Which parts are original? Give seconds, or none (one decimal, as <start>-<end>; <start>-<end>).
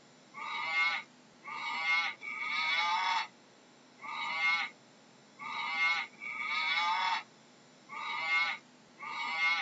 0.0-9.6